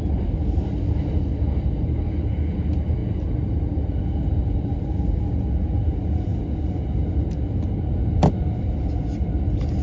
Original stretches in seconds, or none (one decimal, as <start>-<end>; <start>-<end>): 0.0-9.8